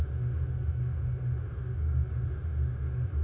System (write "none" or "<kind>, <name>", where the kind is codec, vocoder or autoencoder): autoencoder, DAC-VAE